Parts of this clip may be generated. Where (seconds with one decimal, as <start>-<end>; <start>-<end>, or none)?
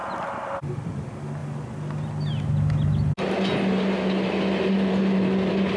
none